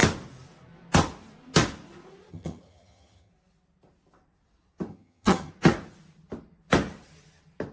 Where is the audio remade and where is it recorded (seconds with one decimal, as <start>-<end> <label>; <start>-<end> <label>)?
0.0-2.3 recorded; 2.3-3.3 remade; 3.3-4.9 recorded; 4.9-5.5 remade; 5.5-7.7 recorded